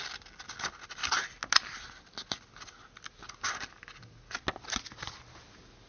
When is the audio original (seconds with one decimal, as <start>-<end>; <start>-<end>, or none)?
0.0-5.9